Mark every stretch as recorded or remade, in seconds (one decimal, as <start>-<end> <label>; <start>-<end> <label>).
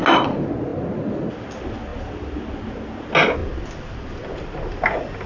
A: 0.0-0.7 recorded; 0.7-1.3 remade; 1.3-1.9 recorded; 1.9-2.6 remade; 2.6-3.4 recorded; 3.4-4.1 remade; 4.1-5.3 recorded